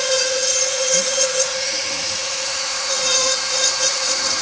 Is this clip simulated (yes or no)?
yes